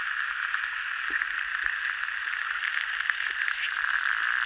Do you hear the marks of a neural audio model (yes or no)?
no